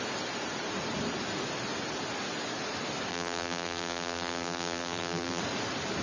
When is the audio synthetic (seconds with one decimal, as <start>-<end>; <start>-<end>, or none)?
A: 3.1-5.4